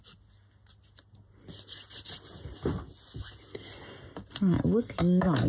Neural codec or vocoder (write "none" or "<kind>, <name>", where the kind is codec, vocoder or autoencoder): none